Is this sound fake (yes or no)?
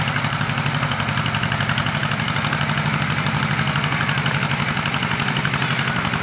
no